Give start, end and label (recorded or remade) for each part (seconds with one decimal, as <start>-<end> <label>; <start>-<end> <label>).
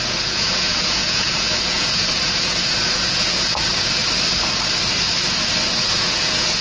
0.0-4.0 remade; 4.0-5.7 recorded; 5.7-6.6 remade